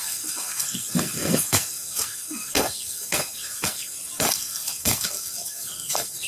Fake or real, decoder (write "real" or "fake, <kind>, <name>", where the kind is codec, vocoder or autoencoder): fake, codec, SNAC